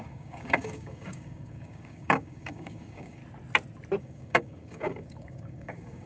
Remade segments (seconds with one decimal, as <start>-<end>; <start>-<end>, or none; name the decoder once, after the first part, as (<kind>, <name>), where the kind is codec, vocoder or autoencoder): 0.0-3.2 (codec, DAC); 4.0-6.1